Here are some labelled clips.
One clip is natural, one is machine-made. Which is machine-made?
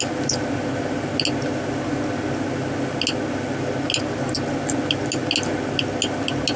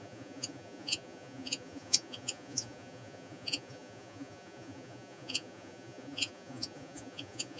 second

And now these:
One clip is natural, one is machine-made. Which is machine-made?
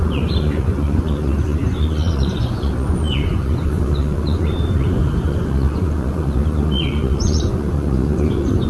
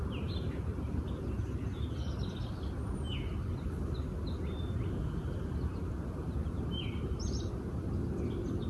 first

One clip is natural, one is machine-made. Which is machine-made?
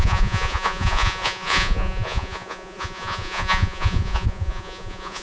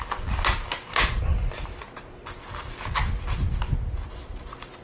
first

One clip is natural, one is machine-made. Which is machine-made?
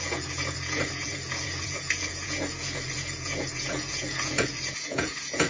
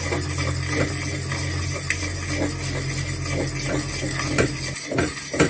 first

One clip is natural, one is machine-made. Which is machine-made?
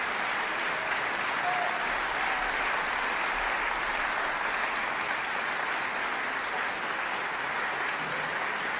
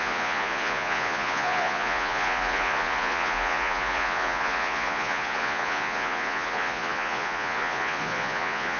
second